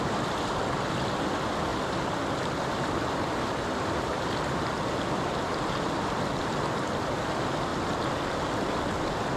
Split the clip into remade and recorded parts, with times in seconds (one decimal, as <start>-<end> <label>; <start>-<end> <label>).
0.0-9.4 recorded